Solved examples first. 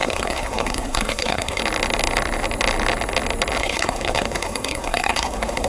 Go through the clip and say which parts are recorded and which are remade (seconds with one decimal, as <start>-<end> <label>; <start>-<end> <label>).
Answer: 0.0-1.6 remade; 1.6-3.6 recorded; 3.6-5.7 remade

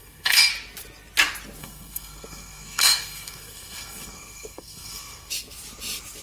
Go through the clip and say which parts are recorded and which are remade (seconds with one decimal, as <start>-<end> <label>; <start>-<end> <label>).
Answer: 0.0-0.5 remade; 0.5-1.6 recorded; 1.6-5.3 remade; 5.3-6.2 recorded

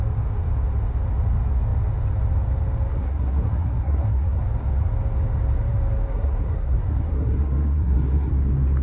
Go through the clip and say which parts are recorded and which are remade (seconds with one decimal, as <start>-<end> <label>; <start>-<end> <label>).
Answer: 0.0-2.9 recorded; 2.9-4.4 remade; 4.4-6.1 recorded; 6.1-8.3 remade; 8.3-8.8 recorded

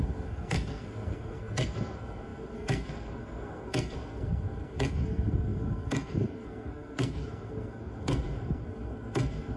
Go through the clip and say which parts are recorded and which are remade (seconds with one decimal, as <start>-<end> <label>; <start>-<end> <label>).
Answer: 0.0-9.6 remade

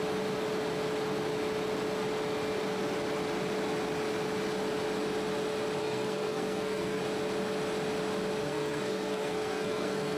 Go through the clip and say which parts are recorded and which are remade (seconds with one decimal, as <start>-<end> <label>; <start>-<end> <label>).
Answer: 0.0-5.8 recorded; 5.8-7.0 remade; 7.0-8.4 recorded; 8.4-10.2 remade

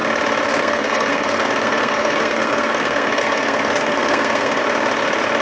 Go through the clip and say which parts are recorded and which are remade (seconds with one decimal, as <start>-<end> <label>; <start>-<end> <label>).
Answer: 0.0-0.6 recorded; 0.6-4.6 remade; 4.6-5.4 recorded

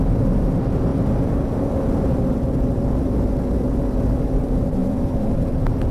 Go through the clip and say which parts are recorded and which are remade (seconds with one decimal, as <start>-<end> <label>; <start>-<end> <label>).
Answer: 0.0-5.9 recorded

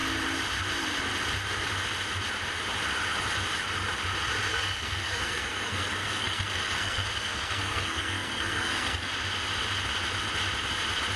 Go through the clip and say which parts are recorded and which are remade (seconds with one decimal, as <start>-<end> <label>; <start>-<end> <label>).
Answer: 0.0-4.5 recorded; 4.5-9.1 remade; 9.1-11.2 recorded